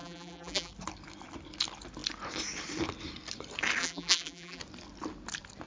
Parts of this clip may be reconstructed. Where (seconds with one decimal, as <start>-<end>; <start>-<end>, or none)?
0.0-0.7; 3.8-4.6